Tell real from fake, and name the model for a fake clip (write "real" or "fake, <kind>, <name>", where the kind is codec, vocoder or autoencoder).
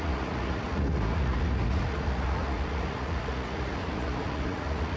fake, vocoder, Vocos